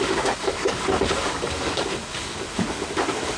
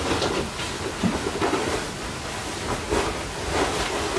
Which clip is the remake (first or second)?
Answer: first